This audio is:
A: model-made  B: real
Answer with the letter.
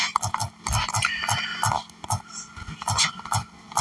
B